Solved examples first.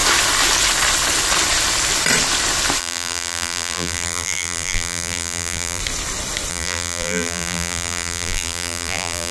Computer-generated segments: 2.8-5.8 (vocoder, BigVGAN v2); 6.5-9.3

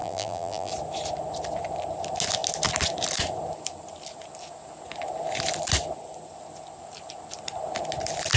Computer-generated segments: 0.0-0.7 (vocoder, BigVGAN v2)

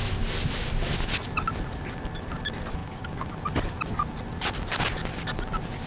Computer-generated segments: none

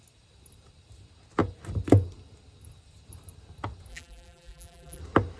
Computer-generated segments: 3.9-5.0 (vocoder, BigVGAN v2)